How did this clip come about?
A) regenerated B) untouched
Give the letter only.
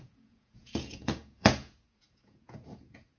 A